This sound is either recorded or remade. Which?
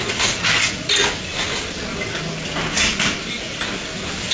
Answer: recorded